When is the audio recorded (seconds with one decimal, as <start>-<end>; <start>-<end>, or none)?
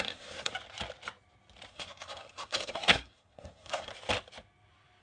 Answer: 0.5-1.7; 3.9-5.0